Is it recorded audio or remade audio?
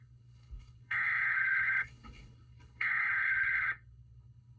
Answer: remade